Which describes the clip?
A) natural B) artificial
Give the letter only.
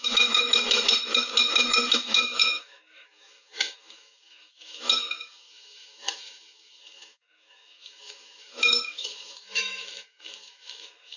B